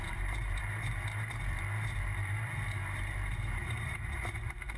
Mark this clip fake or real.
fake